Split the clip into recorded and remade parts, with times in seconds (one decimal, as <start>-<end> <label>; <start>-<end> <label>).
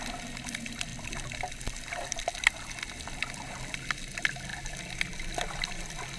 0.0-6.2 recorded